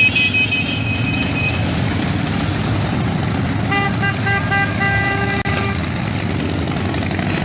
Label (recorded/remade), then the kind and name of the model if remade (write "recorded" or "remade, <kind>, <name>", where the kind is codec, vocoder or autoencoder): recorded